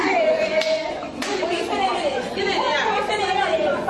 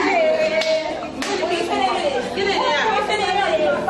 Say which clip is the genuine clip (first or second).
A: second